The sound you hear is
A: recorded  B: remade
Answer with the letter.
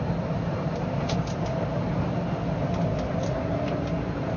A